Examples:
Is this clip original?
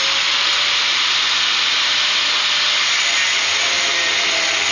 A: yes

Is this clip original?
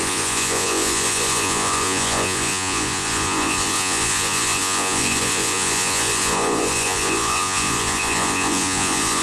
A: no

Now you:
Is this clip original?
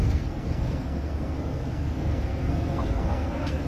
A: no